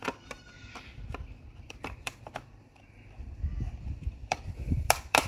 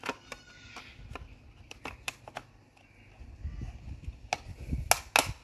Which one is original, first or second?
second